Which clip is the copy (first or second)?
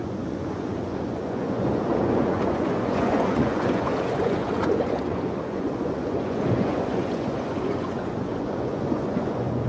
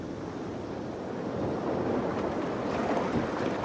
first